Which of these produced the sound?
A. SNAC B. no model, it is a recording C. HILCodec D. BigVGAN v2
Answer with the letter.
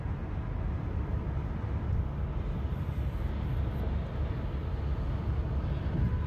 B